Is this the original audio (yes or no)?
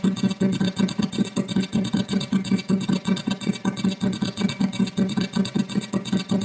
no